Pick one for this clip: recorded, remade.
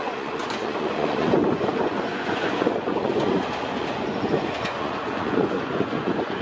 remade